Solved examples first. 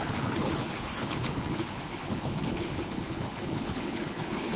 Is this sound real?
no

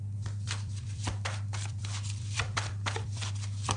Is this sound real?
no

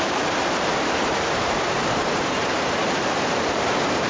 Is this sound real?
no